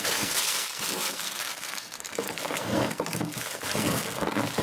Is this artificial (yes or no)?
yes